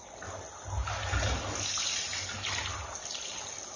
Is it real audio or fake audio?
real